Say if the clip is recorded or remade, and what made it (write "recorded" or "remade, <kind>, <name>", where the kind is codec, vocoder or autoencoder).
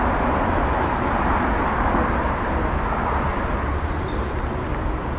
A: recorded